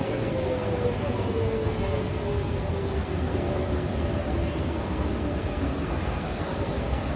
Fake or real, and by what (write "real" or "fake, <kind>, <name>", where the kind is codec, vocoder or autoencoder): fake, codec, SNAC